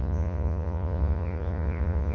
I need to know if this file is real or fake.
fake